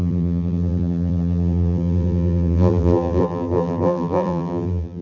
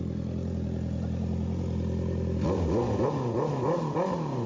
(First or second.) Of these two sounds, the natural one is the second